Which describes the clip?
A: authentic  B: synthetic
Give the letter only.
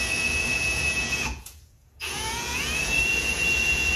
B